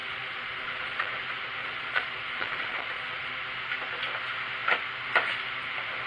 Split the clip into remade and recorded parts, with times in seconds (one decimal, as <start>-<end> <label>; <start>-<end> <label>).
0.0-1.1 remade; 1.1-1.6 recorded; 1.6-3.3 remade; 3.3-6.1 recorded